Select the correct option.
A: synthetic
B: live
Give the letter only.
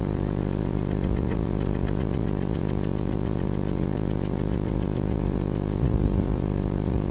A